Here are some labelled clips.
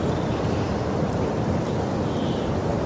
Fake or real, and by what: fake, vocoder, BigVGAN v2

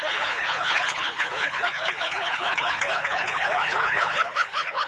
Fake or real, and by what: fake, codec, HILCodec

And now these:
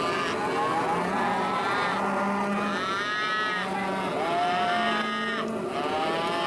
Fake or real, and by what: real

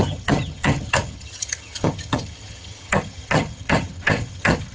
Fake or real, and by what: fake, vocoder, HiFi-GAN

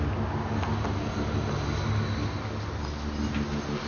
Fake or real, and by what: real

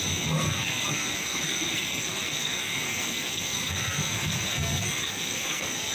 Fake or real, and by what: fake, codec, SNAC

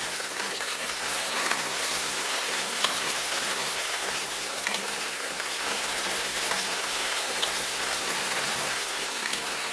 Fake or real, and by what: fake, codec, SNAC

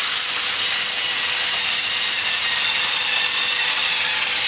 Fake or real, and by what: real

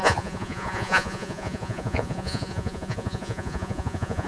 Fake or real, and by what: fake, vocoder, Vocos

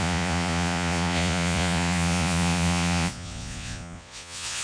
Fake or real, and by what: fake, vocoder, Vocos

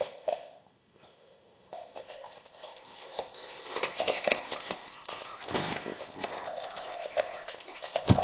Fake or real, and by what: fake, codec, ZipCodec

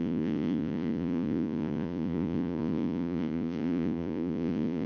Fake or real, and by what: fake, vocoder, Vocos